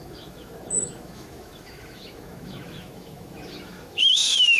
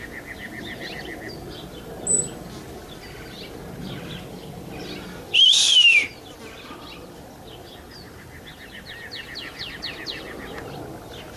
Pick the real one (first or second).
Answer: second